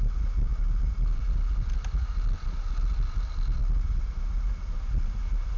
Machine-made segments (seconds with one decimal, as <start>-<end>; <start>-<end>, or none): none